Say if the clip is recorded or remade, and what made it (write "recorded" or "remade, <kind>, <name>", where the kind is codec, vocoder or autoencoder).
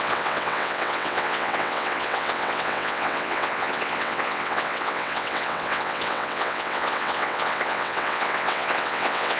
remade, vocoder, WaveNeXt